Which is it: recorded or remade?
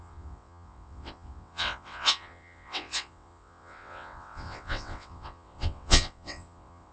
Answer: remade